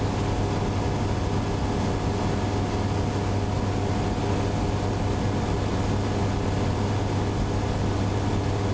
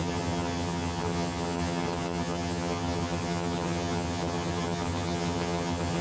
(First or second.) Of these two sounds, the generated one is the second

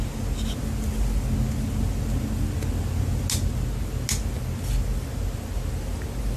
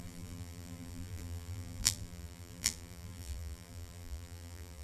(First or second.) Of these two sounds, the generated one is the second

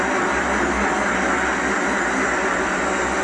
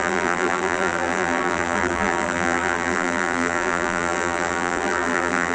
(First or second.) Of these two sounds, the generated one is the second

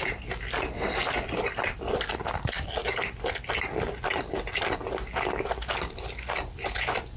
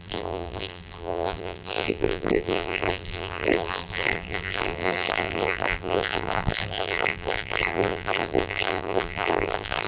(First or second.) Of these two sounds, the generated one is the second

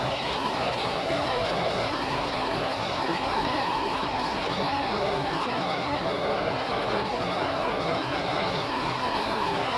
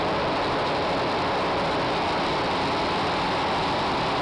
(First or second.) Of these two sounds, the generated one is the first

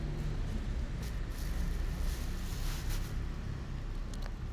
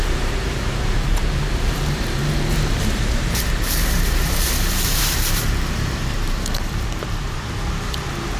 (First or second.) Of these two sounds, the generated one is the second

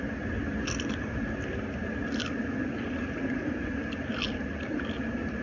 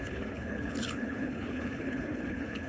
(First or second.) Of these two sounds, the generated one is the second